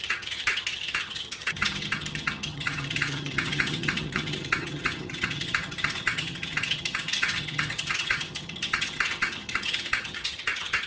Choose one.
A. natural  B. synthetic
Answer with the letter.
B